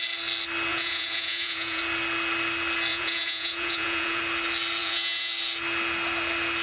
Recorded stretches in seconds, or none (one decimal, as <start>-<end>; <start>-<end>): 0.0-0.7; 1.8-2.9; 4.2-4.8; 5.3-6.6